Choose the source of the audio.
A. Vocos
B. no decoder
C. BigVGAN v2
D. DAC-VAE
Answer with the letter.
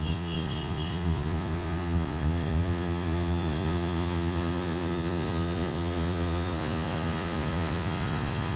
A